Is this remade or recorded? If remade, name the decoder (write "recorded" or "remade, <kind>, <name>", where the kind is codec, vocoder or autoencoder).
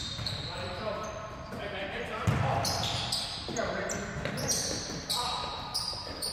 remade, vocoder, BigVGAN v2